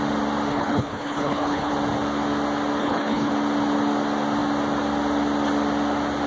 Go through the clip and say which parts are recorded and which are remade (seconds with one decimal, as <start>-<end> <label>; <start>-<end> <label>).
0.0-0.5 recorded; 0.5-1.7 remade; 1.7-2.8 recorded; 2.8-3.3 remade; 3.3-6.3 recorded